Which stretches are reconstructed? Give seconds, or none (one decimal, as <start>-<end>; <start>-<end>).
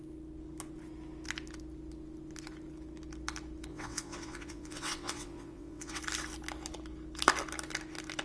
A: 3.7-6.0